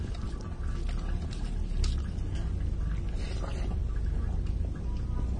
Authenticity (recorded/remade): recorded